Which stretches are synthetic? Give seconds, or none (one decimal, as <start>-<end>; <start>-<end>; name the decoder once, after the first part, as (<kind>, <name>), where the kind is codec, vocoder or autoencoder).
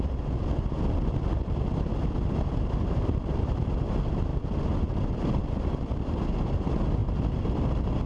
none